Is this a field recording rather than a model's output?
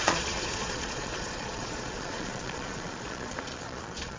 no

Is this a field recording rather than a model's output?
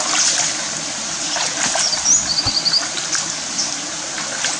yes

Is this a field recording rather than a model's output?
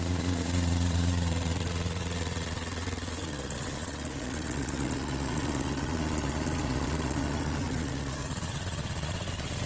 no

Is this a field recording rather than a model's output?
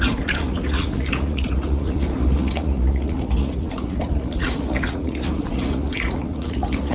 no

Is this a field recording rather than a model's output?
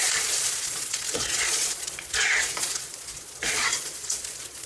no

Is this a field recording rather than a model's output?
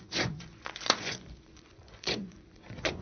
no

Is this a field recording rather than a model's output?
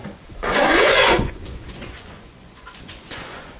no